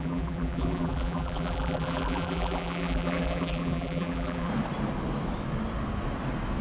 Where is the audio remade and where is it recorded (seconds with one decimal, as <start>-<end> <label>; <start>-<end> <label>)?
0.0-4.5 remade; 4.5-6.6 recorded